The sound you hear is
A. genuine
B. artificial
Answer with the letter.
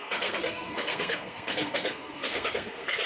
B